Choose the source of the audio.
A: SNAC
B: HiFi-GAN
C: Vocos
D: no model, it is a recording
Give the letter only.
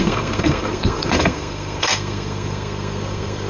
A